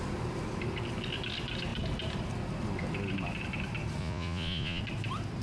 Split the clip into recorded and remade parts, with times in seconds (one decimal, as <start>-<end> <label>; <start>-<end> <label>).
0.0-4.0 recorded; 4.0-4.8 remade; 4.8-5.4 recorded